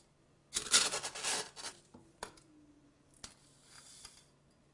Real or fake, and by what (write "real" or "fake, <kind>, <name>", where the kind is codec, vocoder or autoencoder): real